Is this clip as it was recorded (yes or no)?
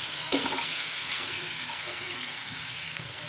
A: no